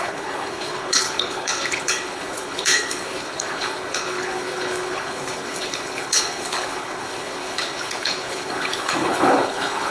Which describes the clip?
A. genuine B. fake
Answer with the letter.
B